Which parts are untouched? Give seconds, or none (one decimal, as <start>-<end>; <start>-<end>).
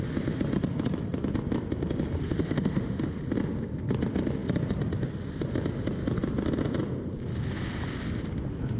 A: 0.0-2.3; 3.2-8.8